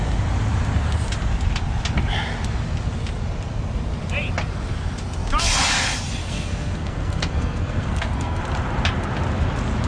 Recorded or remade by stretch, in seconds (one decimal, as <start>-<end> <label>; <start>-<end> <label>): 0.0-6.2 recorded; 6.2-8.4 remade; 8.4-9.9 recorded